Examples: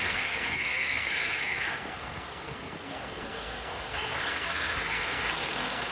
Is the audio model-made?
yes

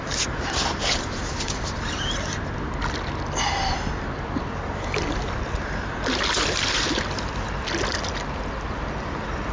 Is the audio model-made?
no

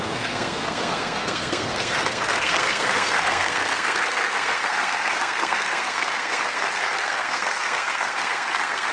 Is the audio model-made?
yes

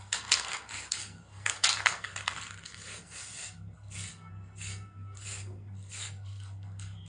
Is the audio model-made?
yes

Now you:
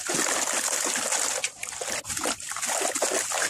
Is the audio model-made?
no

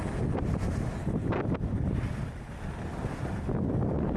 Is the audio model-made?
no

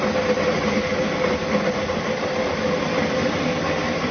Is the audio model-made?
no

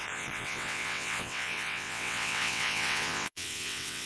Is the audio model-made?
yes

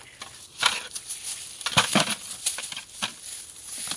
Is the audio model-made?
no